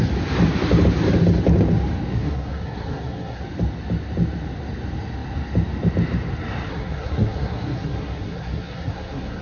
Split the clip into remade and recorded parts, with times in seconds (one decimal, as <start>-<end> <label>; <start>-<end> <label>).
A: 0.0-2.1 recorded; 2.1-3.4 remade; 3.4-6.7 recorded; 6.7-9.4 remade